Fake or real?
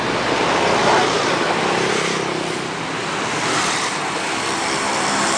real